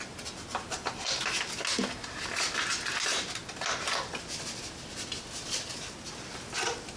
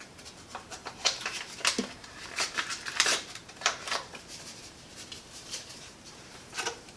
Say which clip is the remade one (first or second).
second